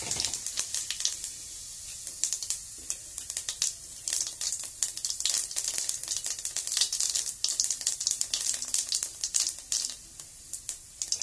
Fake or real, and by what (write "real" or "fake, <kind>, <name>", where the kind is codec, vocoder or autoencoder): real